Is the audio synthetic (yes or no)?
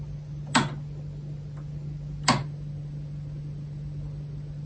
no